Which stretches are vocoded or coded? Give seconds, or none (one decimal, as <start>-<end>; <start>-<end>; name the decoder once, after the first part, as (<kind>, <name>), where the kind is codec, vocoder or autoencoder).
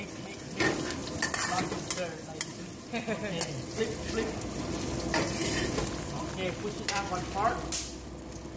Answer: none